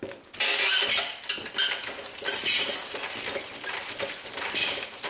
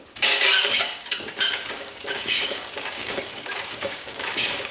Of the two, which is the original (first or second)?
first